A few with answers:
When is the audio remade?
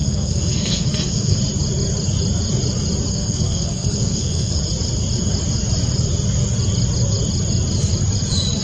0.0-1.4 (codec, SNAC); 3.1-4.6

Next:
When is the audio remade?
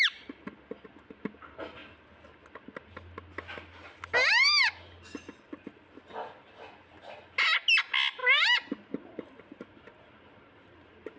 none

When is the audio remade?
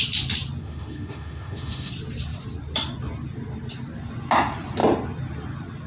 0.6-1.9 (autoencoder, DAC-VAE)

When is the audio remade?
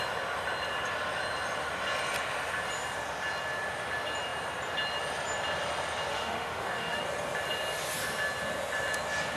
6.1-7.0 (autoencoder, DAC-VAE)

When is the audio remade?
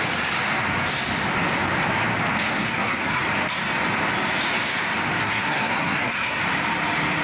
2.5-3.2 (codec, SNAC); 5.2-6.4